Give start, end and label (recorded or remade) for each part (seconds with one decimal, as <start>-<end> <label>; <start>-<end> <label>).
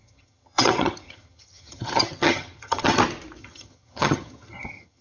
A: 0.0-3.0 remade; 3.0-3.4 recorded; 3.4-5.0 remade